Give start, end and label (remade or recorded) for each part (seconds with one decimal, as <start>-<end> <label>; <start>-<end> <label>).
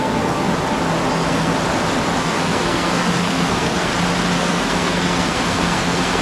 0.0-0.5 remade; 0.5-1.1 recorded; 1.1-1.5 remade; 1.5-2.2 recorded; 2.2-3.9 remade; 3.9-4.4 recorded; 4.4-6.2 remade